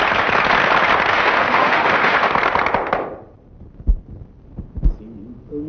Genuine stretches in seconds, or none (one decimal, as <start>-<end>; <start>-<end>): 0.0-1.1; 2.3-5.7